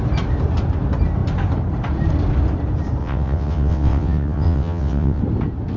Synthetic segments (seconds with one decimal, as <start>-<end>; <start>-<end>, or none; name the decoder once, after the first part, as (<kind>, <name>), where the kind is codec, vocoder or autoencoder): 3.0-5.2 (vocoder, WaveNeXt)